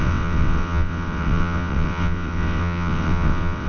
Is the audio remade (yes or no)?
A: yes